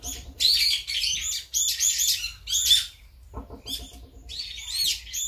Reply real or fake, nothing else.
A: real